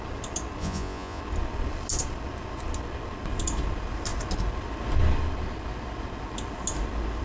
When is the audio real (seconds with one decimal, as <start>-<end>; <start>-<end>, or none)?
0.0-0.6; 1.2-7.2